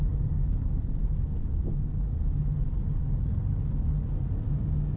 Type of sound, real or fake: real